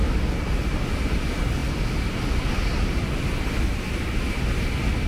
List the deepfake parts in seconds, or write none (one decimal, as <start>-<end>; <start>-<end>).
none